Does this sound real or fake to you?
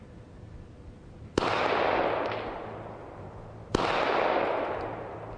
real